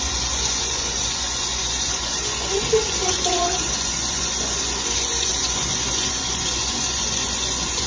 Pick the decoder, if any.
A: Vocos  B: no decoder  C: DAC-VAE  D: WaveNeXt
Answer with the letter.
A